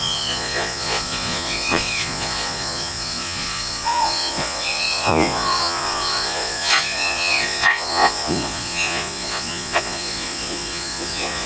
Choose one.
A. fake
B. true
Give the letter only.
A